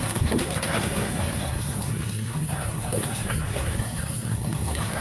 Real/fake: fake